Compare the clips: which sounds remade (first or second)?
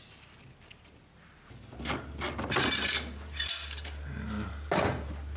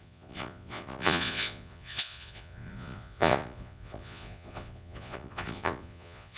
second